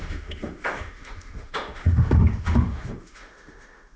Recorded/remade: remade